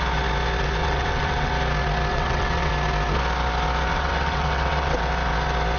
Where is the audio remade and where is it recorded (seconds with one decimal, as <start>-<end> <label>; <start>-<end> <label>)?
0.0-0.8 recorded; 0.8-1.5 remade; 1.5-2.1 recorded; 2.1-2.7 remade; 2.7-3.9 recorded; 3.9-5.1 remade; 5.1-5.8 recorded

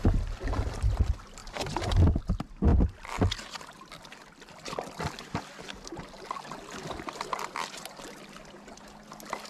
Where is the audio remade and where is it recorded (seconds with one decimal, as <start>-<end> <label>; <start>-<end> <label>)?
0.0-9.5 recorded

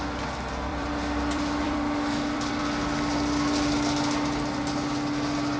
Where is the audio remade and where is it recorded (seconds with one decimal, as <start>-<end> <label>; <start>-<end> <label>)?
0.0-0.7 recorded; 0.7-2.6 remade; 2.6-5.6 recorded

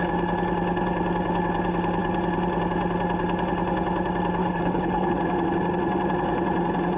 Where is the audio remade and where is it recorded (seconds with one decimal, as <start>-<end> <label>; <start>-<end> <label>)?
0.0-4.4 recorded; 4.4-5.1 remade; 5.1-7.0 recorded

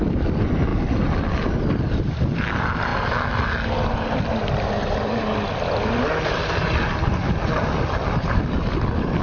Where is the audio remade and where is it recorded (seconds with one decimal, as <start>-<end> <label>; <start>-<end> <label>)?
0.0-9.2 recorded

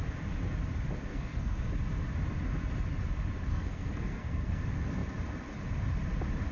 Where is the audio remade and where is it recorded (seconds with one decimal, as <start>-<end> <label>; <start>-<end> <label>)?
0.0-1.1 recorded; 1.1-1.7 remade; 1.7-3.5 recorded; 3.5-4.6 remade; 4.6-6.5 recorded